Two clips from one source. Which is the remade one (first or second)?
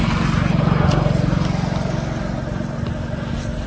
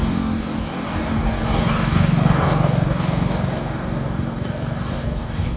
second